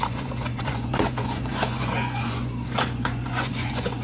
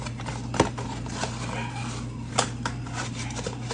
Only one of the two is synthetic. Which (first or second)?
first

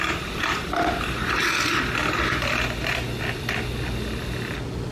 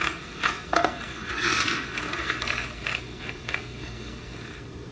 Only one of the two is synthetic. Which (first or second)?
second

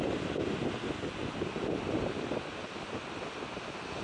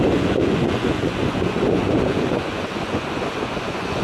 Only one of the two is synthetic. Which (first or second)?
second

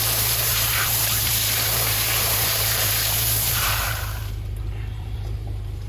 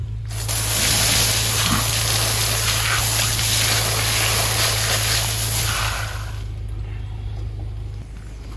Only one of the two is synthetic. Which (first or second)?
first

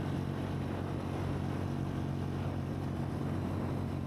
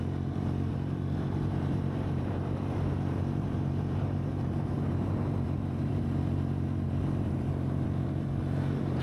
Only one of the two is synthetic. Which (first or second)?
second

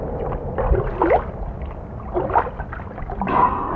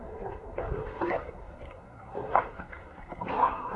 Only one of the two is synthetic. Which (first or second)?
second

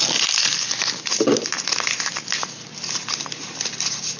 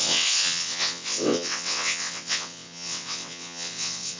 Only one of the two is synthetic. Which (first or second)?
second